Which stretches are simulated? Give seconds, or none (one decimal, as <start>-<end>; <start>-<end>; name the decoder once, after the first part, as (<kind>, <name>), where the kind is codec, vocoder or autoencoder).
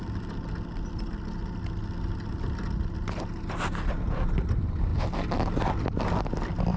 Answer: none